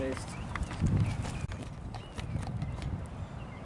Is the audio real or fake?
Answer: fake